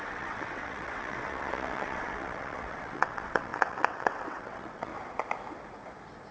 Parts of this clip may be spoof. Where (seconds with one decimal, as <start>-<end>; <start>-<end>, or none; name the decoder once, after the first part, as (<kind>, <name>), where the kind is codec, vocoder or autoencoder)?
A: 0.0-4.9 (vocoder, WaveNeXt)